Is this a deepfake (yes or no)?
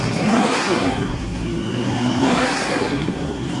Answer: yes